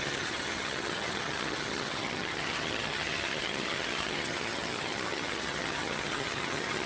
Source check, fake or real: fake